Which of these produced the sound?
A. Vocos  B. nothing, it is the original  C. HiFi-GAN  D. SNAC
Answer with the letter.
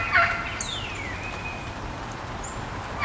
B